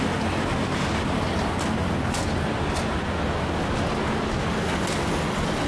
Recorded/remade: recorded